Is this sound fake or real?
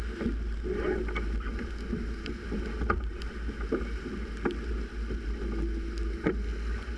real